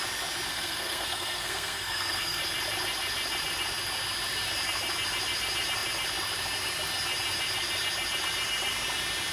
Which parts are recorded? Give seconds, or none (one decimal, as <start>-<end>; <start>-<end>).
0.0-0.5; 2.4-9.3